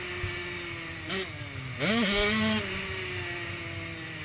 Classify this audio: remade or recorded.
recorded